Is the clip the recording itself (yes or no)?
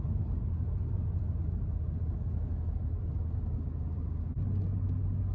yes